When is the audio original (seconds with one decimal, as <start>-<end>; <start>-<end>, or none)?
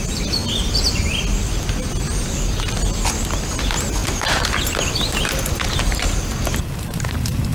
0.4-3.4